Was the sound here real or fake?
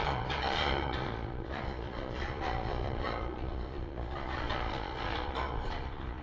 fake